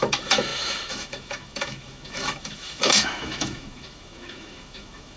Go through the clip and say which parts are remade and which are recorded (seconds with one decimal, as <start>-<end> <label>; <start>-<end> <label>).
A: 0.0-5.2 remade